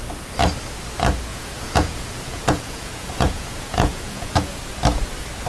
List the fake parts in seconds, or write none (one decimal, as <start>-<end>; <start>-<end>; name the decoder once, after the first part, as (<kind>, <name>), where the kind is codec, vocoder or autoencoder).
1.3-4.6 (vocoder, Vocos)